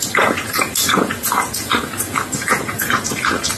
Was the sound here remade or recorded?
remade